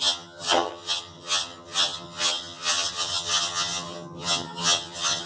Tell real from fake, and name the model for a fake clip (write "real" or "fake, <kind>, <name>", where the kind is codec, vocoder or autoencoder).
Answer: fake, vocoder, HiFi-GAN